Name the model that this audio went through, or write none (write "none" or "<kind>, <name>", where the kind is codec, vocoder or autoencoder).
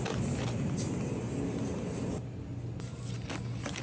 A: none